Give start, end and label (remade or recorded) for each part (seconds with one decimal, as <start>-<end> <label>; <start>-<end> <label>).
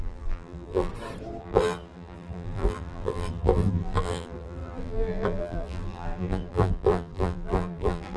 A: 0.0-0.9 remade; 0.9-1.4 recorded; 1.4-8.2 remade